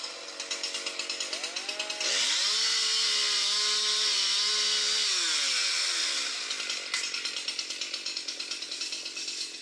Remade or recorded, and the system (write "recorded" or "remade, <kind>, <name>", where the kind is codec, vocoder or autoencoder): recorded